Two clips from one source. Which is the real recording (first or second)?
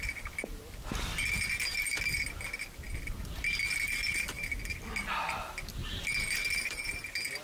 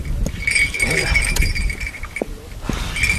first